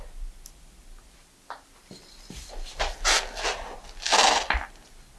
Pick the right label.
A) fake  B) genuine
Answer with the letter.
B